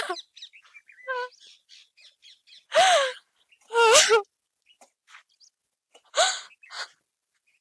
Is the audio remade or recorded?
recorded